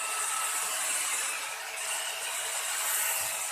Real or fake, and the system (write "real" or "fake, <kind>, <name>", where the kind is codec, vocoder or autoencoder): real